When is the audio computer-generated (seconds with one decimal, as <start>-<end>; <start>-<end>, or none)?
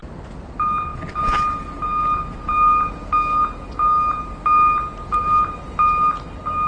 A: none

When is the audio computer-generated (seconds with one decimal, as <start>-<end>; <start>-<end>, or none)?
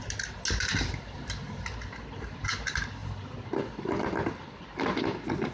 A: none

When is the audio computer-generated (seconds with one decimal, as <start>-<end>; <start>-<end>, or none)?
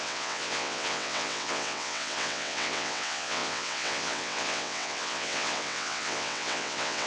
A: 0.0-7.1